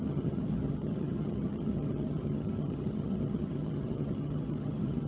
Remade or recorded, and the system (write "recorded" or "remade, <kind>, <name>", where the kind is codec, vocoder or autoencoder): remade, vocoder, HiFi-GAN